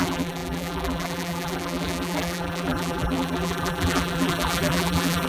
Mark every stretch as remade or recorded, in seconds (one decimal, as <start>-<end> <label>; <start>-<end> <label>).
0.0-5.3 remade